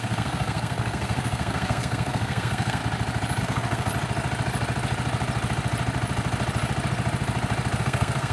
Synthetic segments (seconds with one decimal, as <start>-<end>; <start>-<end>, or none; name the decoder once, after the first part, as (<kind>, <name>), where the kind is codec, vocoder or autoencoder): 0.0-2.8 (codec, SNAC); 3.4-3.9; 7.8-8.3